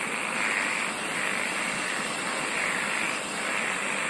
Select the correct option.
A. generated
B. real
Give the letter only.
B